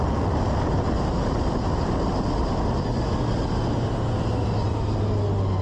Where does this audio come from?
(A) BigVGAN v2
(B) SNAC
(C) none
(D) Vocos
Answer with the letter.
C